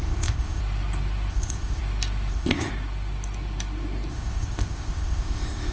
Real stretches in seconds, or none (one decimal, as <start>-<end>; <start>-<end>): 0.6-1.3; 1.8-2.3; 2.7-4.1